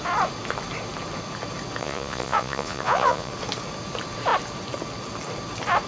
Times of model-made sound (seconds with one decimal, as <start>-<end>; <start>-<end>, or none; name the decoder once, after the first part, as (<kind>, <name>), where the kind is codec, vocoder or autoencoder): 1.8-3.3 (vocoder, Vocos)